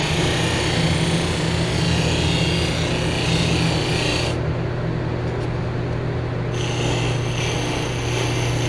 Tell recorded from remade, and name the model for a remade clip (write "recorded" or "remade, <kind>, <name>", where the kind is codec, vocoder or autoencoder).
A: recorded